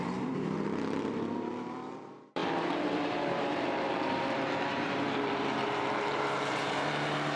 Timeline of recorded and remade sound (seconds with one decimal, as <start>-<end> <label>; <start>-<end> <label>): 0.0-7.4 remade